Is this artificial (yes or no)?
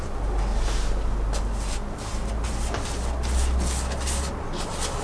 no